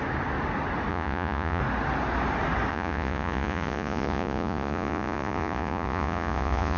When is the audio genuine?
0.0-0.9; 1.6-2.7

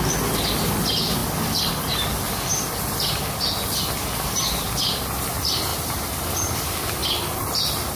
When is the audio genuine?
0.0-5.7; 6.3-8.0

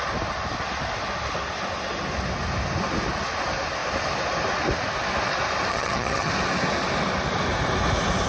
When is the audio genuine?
0.0-5.7; 6.3-8.3

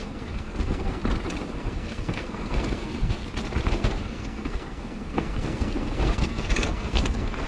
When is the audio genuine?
1.0-1.5; 3.2-3.7